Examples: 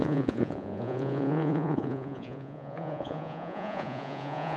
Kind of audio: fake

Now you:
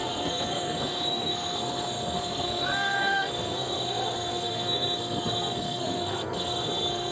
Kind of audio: fake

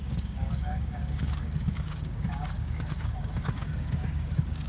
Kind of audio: fake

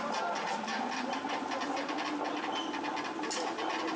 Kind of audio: real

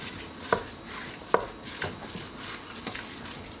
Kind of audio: real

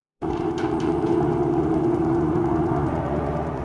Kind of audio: fake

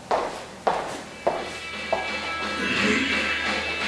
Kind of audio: real